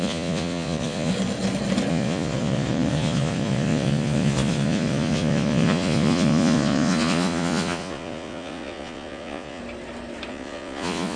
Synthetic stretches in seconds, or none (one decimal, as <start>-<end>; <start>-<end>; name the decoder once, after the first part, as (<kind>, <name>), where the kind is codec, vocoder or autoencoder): 0.0-1.1 (vocoder, Vocos); 1.9-9.6; 10.3-11.2